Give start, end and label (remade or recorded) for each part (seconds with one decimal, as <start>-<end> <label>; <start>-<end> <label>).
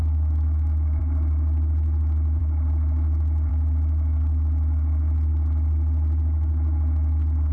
0.0-1.0 remade; 1.0-7.5 recorded